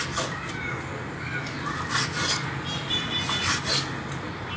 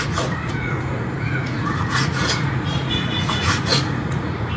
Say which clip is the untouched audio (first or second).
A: first